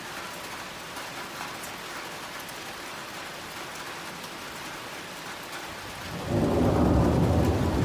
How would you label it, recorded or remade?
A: recorded